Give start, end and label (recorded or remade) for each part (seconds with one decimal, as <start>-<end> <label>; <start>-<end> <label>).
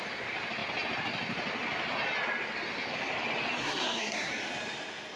0.0-3.6 recorded; 3.6-4.3 remade; 4.3-5.2 recorded